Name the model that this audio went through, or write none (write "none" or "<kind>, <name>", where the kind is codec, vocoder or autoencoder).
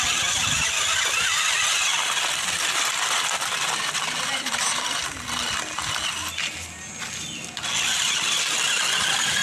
none